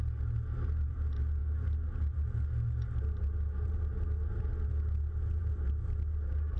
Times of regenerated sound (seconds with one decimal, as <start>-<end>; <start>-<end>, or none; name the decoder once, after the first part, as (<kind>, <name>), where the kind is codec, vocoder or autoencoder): none